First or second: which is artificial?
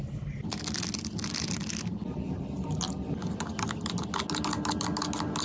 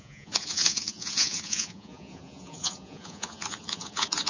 second